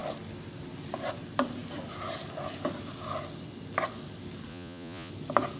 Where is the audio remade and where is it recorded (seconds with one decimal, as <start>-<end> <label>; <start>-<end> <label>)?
0.0-4.5 recorded; 4.5-5.1 remade; 5.1-5.6 recorded